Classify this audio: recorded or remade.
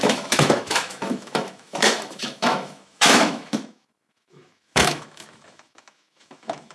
remade